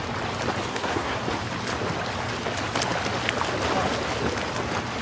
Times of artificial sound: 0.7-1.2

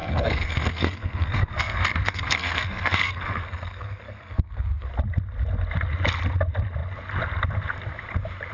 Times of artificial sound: 0.0-4.9